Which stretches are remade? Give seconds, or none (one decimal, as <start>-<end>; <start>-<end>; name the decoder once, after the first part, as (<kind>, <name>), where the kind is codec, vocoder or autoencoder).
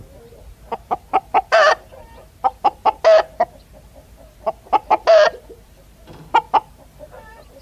none